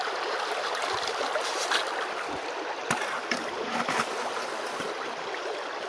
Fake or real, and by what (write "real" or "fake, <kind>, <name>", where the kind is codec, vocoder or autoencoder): real